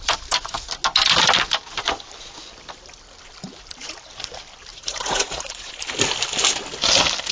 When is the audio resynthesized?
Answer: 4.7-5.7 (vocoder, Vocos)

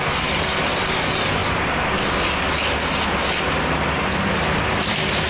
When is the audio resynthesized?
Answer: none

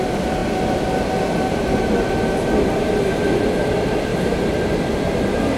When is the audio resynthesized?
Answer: none